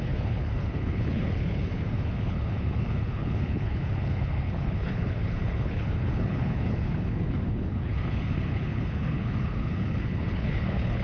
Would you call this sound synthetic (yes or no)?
yes